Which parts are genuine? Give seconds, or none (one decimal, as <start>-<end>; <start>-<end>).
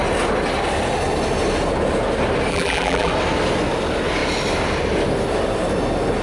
0.0-2.5; 3.1-6.2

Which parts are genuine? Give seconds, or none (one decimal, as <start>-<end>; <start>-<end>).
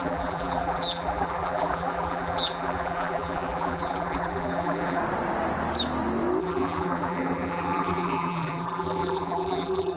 5.0-6.4